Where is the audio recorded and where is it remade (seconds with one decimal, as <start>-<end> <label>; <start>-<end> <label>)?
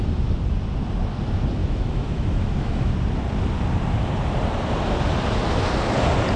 0.0-1.6 recorded; 1.6-2.9 remade; 2.9-6.4 recorded